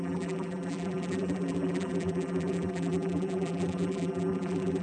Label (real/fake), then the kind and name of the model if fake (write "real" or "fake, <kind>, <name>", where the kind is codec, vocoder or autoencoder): fake, vocoder, BigVGAN v2